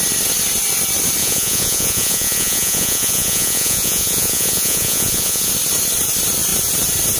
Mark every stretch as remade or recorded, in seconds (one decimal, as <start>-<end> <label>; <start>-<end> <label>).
0.0-1.2 recorded; 1.2-5.5 remade; 5.5-7.2 recorded